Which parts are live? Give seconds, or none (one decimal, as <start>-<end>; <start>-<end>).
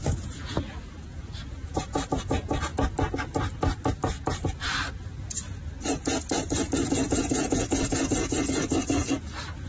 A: 2.7-6.9